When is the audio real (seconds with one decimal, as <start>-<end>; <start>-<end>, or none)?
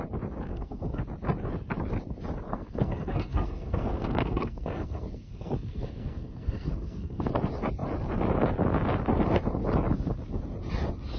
0.0-0.5; 1.0-2.5; 7.3-11.2